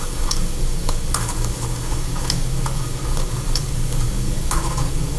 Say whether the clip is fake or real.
fake